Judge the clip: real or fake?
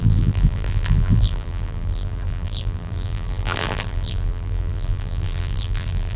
fake